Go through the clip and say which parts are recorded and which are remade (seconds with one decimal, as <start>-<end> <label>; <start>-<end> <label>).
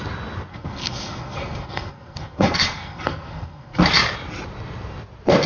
0.0-0.5 recorded; 0.5-3.8 remade; 3.8-5.5 recorded